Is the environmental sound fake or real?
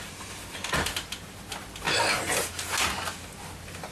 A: real